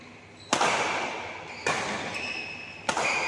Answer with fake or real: real